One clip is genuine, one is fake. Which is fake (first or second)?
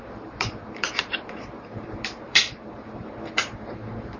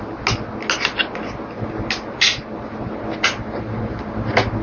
first